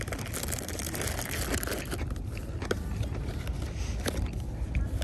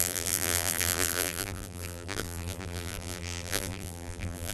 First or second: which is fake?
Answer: second